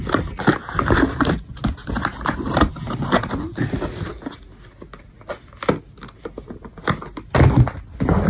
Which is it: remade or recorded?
recorded